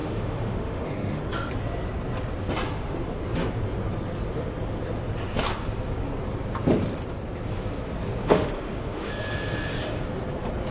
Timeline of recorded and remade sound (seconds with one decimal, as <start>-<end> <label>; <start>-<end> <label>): 0.0-1.2 remade; 1.2-8.2 recorded; 8.2-9.1 remade; 9.1-10.7 recorded